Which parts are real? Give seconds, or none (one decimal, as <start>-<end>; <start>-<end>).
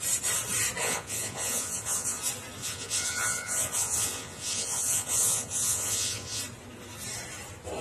0.0-0.8; 2.2-2.6; 6.4-7.8